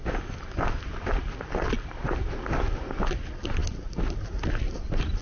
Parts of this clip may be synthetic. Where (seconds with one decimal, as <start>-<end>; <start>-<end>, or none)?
none